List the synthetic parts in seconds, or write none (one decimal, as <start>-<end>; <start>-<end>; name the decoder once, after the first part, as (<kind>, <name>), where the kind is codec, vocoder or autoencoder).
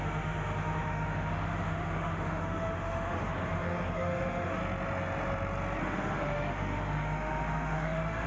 0.0-4.6 (autoencoder, DAC-VAE); 5.8-8.3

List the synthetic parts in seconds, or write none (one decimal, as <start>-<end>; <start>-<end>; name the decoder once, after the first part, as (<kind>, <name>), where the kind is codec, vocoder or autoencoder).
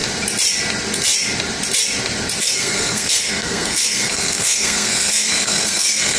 2.4-6.2 (codec, SNAC)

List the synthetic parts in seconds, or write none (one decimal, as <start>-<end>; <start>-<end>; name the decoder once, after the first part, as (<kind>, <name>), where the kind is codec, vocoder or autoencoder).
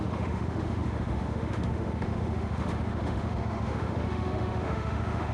0.0-5.3 (autoencoder, DAC-VAE)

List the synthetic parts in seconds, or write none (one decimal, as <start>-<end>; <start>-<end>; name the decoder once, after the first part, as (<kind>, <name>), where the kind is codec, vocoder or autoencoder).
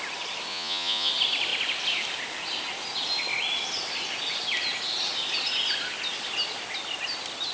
0.5-1.1 (vocoder, Vocos)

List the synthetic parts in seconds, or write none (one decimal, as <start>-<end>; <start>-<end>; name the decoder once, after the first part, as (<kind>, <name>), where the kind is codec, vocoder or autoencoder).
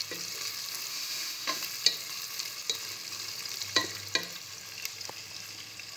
0.9-1.6 (autoencoder, DAC-VAE)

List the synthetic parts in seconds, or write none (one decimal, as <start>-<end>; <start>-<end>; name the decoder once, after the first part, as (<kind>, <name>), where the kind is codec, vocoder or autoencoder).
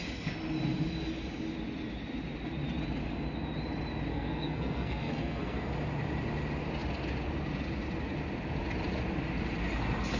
4.1-5.7 (codec, SNAC)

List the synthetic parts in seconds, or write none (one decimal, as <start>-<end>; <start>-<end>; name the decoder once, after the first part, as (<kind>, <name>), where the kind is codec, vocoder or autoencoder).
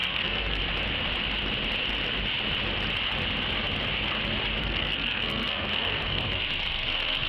0.0-0.6 (codec, SNAC); 4.6-7.3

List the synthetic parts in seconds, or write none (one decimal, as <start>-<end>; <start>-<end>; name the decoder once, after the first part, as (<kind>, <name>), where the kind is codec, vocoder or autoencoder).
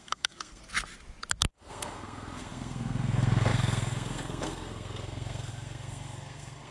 0.0-0.6 (codec, SNAC); 1.5-6.7